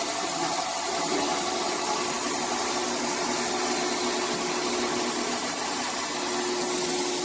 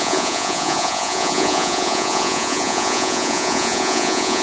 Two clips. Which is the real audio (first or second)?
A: first